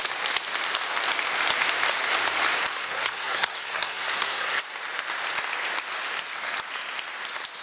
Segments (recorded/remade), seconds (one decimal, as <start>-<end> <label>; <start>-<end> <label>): 0.0-2.7 recorded; 2.7-4.6 remade; 4.6-7.6 recorded